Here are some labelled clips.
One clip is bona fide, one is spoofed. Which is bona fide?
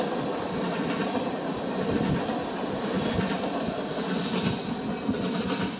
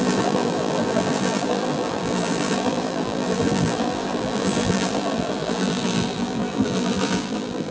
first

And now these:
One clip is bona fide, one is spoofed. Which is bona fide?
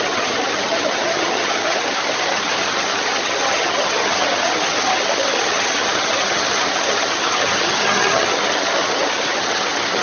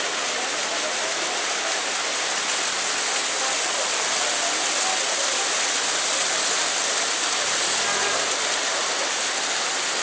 second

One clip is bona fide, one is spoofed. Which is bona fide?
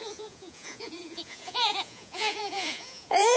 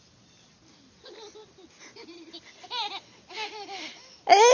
second